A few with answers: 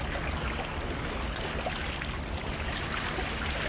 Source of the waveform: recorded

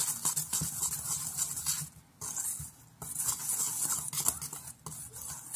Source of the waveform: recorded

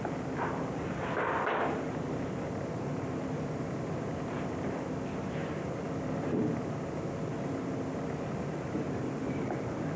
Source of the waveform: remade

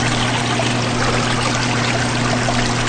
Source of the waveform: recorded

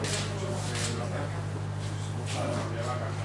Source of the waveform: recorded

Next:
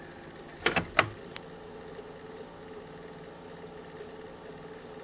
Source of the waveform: recorded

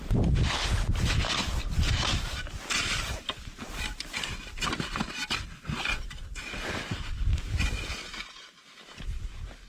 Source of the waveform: recorded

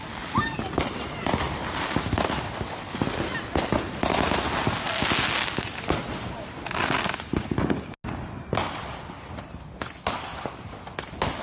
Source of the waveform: recorded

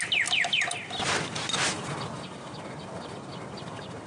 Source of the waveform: recorded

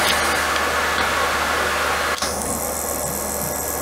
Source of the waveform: recorded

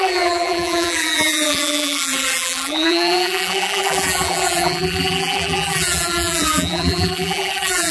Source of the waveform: remade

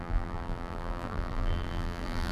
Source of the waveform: remade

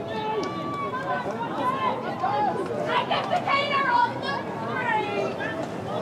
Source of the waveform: recorded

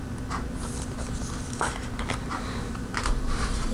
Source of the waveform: recorded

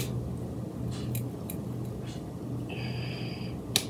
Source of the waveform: recorded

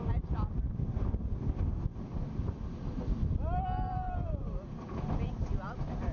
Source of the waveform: recorded